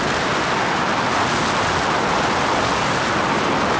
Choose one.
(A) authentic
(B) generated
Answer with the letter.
A